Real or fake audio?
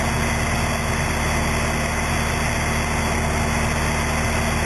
real